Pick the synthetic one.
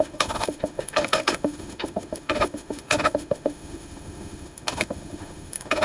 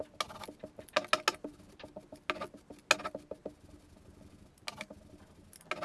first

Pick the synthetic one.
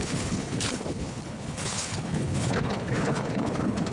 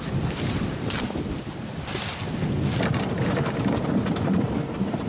first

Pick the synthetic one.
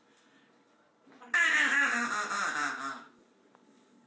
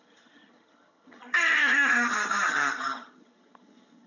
second